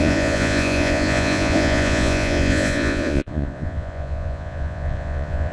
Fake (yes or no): yes